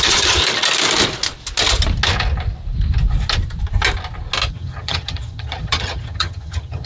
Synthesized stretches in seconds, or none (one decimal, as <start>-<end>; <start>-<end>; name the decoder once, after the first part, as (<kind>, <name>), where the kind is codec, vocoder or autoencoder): 0.0-0.4 (vocoder, HiFi-GAN); 4.5-6.9